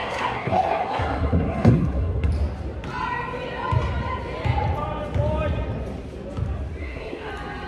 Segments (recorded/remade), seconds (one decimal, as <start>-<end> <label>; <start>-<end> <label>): 0.0-2.3 remade; 2.3-6.8 recorded; 6.8-7.3 remade; 7.3-7.7 recorded